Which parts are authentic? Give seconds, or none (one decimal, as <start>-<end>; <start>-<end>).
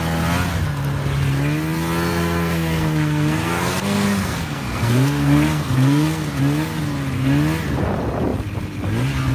0.0-2.1; 6.4-9.3